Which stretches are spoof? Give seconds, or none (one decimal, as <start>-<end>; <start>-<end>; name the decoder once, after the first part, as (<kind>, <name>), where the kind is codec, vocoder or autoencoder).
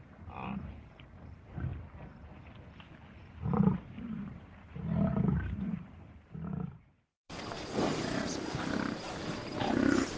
0.0-1.7 (vocoder, BigVGAN v2); 3.3-9.4